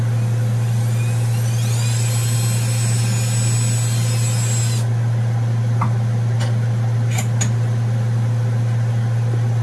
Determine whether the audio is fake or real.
real